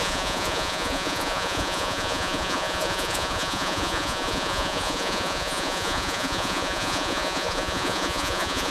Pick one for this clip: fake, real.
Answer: fake